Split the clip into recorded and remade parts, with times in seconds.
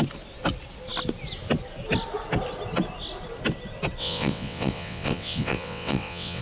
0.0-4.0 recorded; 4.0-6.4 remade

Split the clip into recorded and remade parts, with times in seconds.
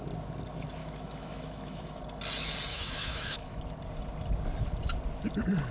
0.0-0.8 recorded; 0.8-2.0 remade; 2.0-2.7 recorded; 2.7-3.6 remade; 3.6-5.7 recorded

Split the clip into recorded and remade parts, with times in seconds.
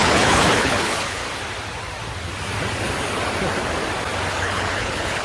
0.0-1.2 remade; 1.2-4.3 recorded; 4.3-5.2 remade